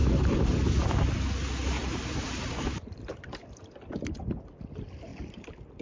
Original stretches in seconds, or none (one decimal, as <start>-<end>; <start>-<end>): 0.5-1.8; 3.4-5.1

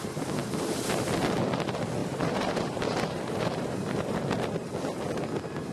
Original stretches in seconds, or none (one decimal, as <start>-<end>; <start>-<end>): 0.0-2.0; 4.2-5.7

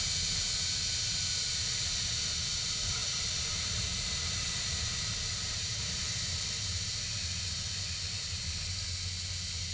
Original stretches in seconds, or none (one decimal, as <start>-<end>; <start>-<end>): 0.0-3.0; 6.9-9.7